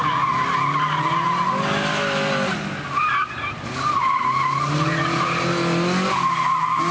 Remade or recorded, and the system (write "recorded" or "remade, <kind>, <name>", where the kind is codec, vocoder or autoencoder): recorded